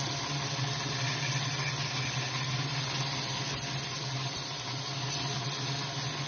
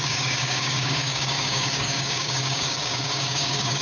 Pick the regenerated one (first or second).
second